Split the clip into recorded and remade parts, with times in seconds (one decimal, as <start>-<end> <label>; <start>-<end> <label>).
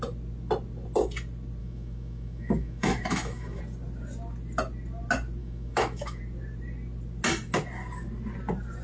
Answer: 0.0-1.6 recorded; 1.6-3.6 remade; 3.6-5.4 recorded; 5.4-6.2 remade; 6.2-8.8 recorded